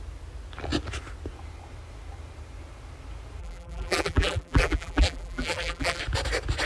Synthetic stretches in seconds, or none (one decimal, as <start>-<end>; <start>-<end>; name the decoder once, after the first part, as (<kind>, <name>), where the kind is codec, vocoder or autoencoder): 3.4-6.0 (vocoder, BigVGAN v2)

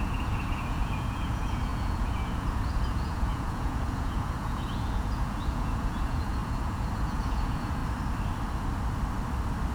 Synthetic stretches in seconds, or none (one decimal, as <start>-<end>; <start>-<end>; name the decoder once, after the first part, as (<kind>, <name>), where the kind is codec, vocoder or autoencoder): 0.0-7.8 (vocoder, Vocos)

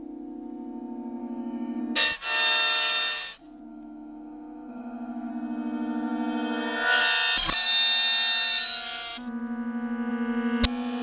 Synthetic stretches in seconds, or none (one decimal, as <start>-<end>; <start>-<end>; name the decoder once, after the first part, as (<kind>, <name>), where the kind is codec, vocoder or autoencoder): 1.2-1.8 (autoencoder, DAC-VAE); 3.7-5.3

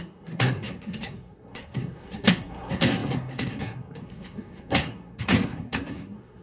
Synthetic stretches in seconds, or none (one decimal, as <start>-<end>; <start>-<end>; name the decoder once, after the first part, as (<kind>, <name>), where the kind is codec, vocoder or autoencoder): 0.0-6.4 (codec, SNAC)

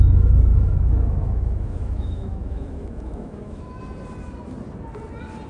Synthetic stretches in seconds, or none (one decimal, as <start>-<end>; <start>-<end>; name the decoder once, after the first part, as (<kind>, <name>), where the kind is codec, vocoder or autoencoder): 0.5-3.8 (autoencoder, DAC-VAE)